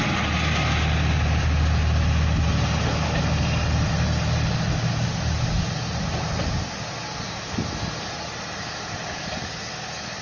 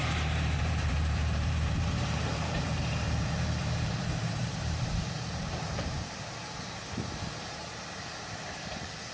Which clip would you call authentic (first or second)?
first